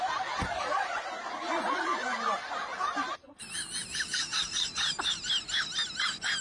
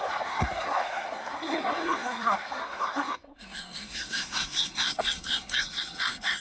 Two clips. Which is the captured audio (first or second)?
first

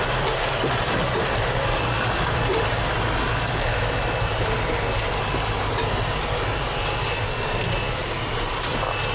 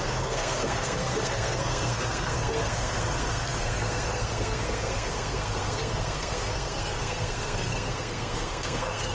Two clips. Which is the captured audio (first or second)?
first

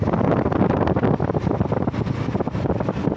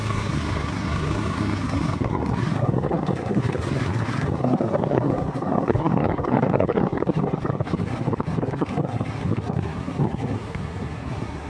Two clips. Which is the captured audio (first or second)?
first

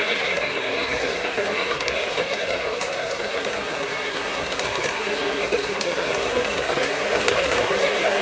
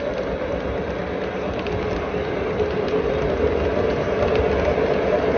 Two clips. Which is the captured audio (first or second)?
second